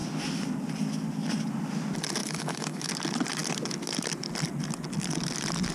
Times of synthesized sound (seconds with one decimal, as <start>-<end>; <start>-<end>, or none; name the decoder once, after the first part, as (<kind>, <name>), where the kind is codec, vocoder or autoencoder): 2.2-2.9 (autoencoder, DAC-VAE)